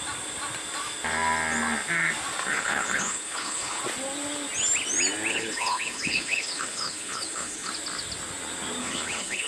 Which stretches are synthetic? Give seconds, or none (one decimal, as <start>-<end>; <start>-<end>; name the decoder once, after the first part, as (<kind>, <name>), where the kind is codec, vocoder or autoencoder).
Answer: 2.5-3.8 (codec, HILCodec); 5.3-7.7; 8.8-9.5